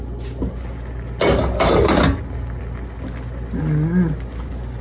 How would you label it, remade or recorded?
recorded